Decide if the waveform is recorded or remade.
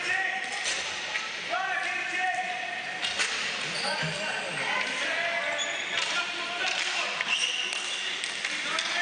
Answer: recorded